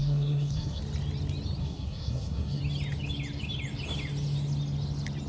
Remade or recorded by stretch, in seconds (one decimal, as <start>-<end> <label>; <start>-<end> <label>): 0.0-0.8 remade; 0.8-1.6 recorded; 1.6-2.6 remade; 2.6-5.3 recorded